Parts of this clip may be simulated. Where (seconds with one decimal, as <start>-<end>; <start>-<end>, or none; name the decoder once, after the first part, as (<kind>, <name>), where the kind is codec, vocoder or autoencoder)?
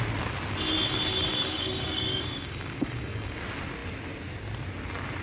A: 1.3-3.4 (codec, DAC)